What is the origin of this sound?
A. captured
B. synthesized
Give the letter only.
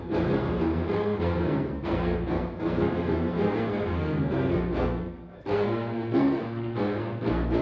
B